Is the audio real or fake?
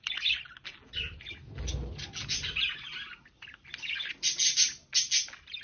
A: real